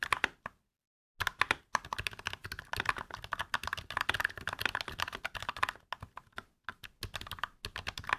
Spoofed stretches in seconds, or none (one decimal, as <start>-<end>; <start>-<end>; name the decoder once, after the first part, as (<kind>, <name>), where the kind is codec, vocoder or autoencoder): none